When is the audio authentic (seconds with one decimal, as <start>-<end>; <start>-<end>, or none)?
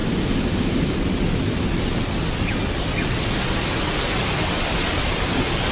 0.0-5.7